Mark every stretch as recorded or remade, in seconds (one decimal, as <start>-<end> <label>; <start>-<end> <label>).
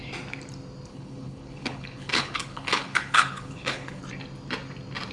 0.0-0.9 recorded; 0.9-4.0 remade; 4.0-5.1 recorded